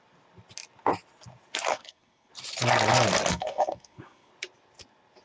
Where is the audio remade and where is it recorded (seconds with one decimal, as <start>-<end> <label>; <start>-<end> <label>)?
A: 0.0-1.7 recorded; 1.7-2.3 remade; 2.3-3.3 recorded; 3.3-4.3 remade; 4.3-5.2 recorded